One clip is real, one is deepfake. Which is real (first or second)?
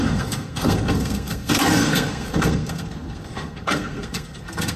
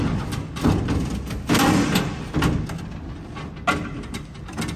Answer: second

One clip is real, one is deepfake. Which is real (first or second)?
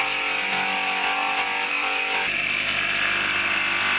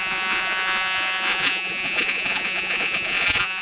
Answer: first